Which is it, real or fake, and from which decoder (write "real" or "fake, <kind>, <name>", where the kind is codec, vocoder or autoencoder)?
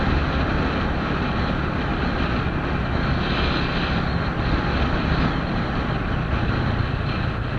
real